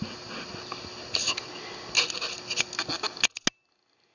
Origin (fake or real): real